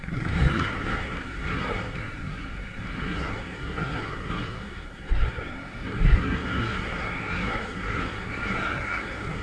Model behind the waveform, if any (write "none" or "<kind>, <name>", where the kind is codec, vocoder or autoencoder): codec, SNAC